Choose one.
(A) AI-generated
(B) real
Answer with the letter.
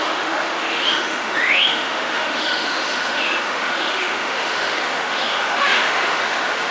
A